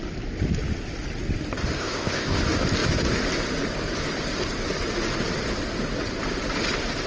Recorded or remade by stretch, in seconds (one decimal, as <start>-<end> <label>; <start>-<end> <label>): 0.0-1.8 recorded; 1.8-2.4 remade; 2.4-7.1 recorded